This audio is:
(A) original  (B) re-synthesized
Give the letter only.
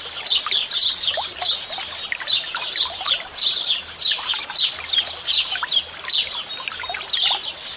A